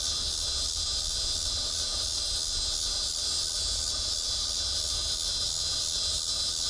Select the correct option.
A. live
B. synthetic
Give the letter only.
A